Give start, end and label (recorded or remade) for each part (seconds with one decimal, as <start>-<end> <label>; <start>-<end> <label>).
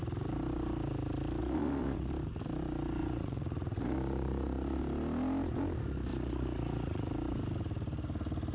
0.0-1.4 recorded; 1.4-2.1 remade; 2.1-3.0 recorded; 3.0-4.8 remade; 4.8-6.1 recorded; 6.1-7.1 remade; 7.1-8.5 recorded